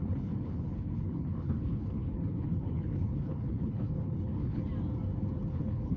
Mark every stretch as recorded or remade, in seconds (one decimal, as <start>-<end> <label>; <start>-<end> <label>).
0.0-4.6 remade; 4.6-5.5 recorded; 5.5-6.0 remade